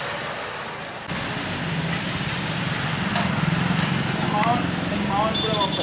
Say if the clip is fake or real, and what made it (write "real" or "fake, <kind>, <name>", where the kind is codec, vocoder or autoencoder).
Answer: real